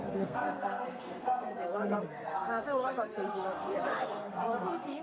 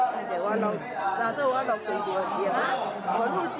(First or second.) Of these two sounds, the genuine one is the second